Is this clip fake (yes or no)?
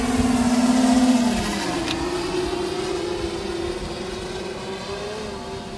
no